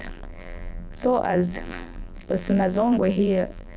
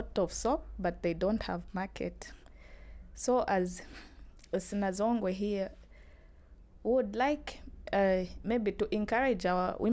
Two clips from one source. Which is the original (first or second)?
second